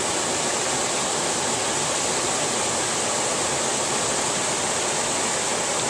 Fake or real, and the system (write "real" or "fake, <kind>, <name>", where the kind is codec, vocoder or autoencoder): real